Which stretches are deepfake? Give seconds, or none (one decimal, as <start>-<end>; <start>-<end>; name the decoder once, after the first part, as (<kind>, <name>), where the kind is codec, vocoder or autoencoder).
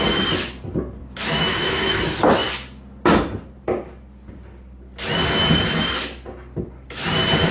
1.0-2.0 (autoencoder, DAC-VAE)